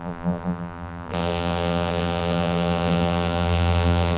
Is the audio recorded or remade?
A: remade